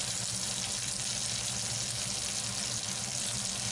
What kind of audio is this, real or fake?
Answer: real